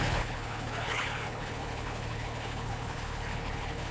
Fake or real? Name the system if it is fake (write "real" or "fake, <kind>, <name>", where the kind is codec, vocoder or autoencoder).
fake, codec, HILCodec